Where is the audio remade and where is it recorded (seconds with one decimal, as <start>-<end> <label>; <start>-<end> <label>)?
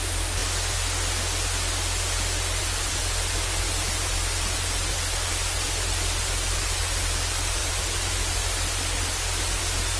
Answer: 0.0-0.4 remade; 0.4-2.6 recorded; 2.6-10.0 remade